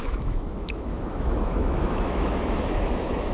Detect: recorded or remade remade